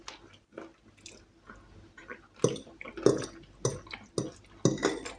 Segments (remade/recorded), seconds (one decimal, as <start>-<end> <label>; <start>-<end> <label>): 0.0-5.2 recorded